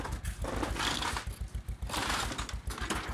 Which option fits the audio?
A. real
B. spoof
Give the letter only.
A